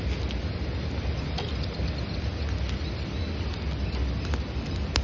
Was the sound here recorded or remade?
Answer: recorded